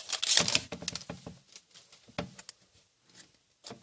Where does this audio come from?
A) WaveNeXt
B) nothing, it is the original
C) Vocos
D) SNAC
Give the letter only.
B